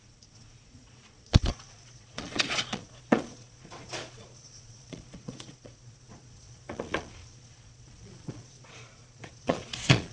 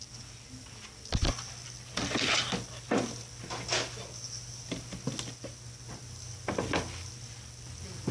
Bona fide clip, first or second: second